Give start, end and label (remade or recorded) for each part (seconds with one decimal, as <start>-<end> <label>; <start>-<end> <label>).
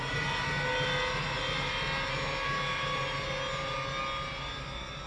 0.0-5.1 recorded